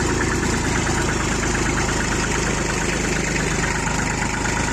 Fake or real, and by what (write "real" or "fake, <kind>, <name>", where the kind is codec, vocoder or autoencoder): real